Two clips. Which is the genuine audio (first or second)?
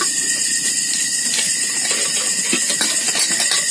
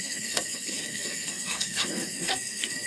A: first